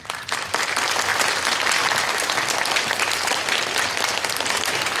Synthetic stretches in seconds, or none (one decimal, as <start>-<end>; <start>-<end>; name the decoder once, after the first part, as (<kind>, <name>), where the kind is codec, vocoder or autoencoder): 0.0-1.1 (vocoder, BigVGAN v2); 4.1-5.0